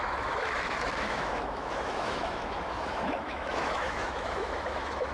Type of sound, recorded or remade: remade